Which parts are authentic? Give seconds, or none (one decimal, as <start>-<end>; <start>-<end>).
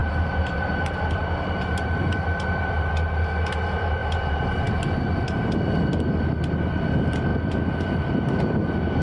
2.9-4.0; 4.8-9.0